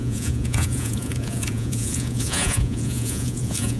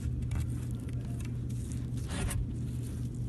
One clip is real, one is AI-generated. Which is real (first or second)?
second